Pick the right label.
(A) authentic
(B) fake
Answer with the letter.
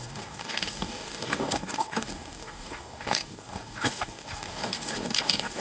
B